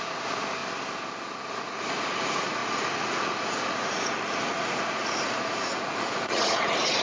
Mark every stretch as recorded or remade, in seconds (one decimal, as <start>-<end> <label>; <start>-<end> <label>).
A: 0.0-0.6 remade; 0.6-1.5 recorded; 1.5-7.0 remade